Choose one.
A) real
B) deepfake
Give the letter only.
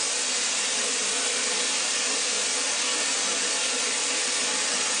A